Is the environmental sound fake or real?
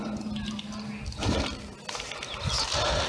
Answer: real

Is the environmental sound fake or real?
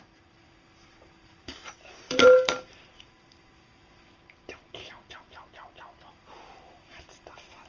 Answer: fake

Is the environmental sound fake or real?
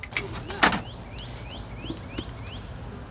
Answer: real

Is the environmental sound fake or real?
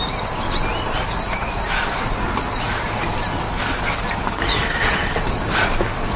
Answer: real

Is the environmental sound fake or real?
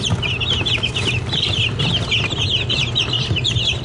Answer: real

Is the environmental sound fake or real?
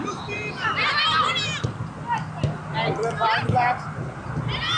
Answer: real